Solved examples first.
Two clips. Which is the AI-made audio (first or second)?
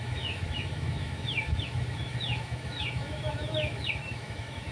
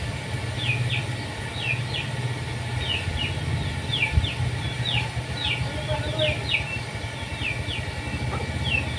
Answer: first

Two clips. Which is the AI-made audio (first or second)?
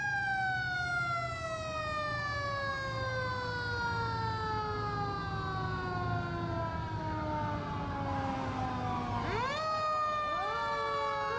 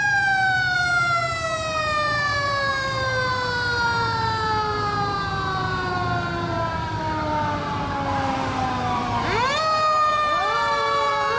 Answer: second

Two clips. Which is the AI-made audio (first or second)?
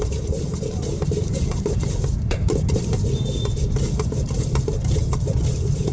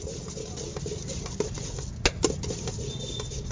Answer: first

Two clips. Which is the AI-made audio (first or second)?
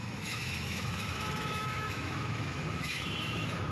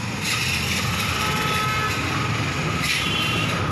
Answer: first